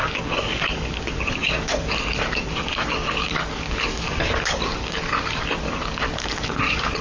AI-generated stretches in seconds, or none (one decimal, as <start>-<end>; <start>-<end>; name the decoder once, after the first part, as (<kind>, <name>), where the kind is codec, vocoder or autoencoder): 0.0-7.0 (codec, DAC)